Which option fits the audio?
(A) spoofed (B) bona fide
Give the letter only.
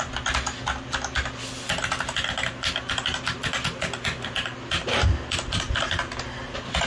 B